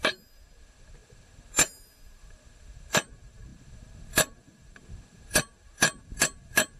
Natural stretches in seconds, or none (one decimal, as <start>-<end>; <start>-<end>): 0.0-6.8